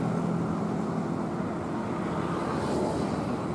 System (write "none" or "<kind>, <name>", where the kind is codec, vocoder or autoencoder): none